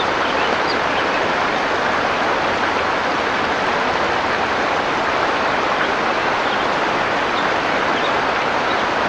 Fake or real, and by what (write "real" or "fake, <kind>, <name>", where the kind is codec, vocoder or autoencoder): real